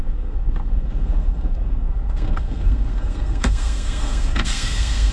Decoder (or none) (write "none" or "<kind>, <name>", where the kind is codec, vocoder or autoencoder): codec, SNAC